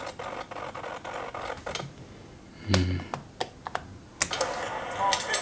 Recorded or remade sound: recorded